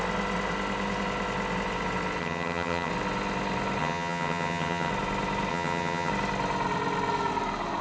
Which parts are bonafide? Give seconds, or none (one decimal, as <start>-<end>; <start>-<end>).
0.0-2.2; 2.9-3.8; 4.9-5.5; 6.1-7.8